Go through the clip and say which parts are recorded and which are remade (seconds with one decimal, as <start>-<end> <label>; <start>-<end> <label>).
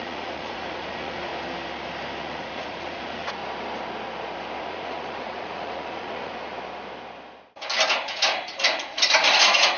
0.0-1.3 remade; 1.3-2.2 recorded; 2.2-3.4 remade; 3.4-4.6 recorded; 4.6-6.5 remade; 6.5-8.0 recorded; 8.0-9.8 remade